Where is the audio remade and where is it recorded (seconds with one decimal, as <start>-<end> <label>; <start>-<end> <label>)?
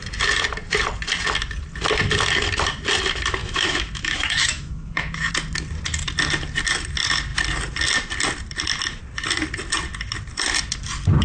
0.0-3.4 recorded; 3.4-5.3 remade; 5.3-11.2 recorded